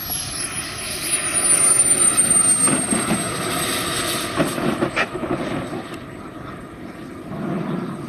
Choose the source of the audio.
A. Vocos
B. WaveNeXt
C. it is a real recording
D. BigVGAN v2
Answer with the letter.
C